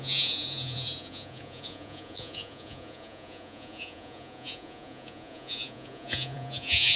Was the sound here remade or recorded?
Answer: remade